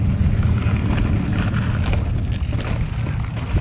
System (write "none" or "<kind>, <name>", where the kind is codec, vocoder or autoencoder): none